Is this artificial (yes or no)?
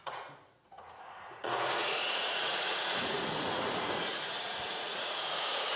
yes